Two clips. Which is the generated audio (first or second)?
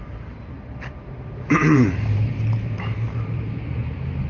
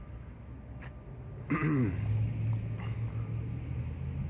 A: first